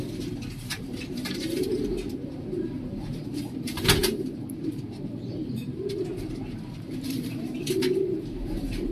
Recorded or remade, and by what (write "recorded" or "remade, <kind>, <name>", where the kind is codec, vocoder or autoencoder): remade, vocoder, BigVGAN v2